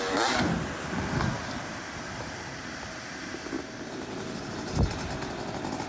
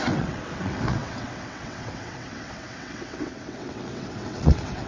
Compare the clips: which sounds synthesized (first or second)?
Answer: second